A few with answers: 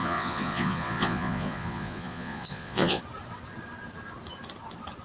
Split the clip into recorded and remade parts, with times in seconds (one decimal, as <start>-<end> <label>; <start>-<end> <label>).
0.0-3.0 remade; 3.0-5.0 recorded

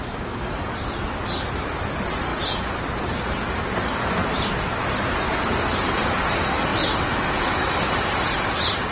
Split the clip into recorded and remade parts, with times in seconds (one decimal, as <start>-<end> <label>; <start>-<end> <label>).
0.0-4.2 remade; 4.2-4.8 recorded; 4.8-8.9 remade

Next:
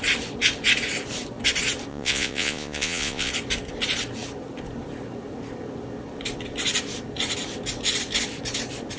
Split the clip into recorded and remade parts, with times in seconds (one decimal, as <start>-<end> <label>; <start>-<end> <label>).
0.0-1.9 recorded; 1.9-3.3 remade; 3.3-9.0 recorded

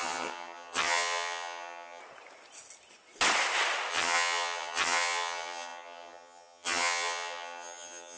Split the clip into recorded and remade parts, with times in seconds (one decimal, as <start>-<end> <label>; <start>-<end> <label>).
0.0-2.0 remade; 2.0-3.9 recorded; 3.9-8.2 remade